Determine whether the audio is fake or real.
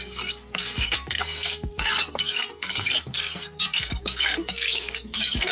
fake